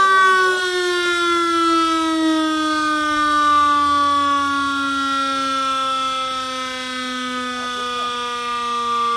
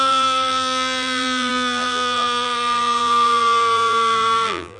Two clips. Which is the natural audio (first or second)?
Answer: first